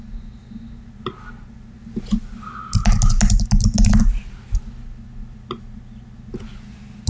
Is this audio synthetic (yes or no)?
no